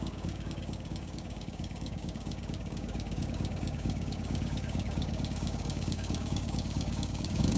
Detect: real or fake fake